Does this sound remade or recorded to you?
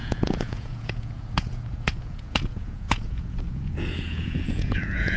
remade